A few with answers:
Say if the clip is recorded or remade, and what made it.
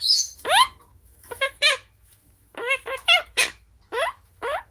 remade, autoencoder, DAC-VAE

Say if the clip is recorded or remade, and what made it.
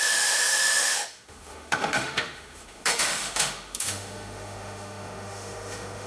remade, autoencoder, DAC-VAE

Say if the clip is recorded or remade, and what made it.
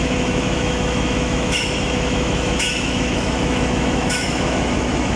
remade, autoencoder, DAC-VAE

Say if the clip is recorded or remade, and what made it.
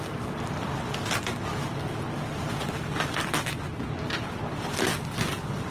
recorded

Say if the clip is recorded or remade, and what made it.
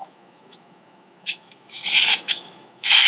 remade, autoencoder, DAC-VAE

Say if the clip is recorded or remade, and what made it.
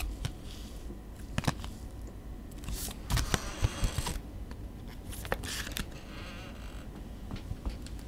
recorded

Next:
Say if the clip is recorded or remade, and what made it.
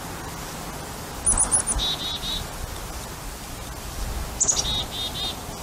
recorded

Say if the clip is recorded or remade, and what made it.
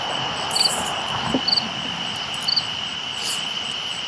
recorded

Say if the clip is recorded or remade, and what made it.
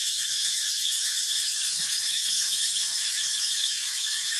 remade, autoencoder, DAC-VAE